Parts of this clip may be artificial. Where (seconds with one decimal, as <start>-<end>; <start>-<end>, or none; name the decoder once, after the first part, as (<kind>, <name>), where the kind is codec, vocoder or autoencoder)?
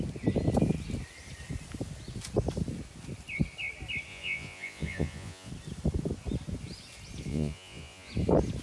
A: 4.1-5.5 (vocoder, Vocos); 7.3-8.1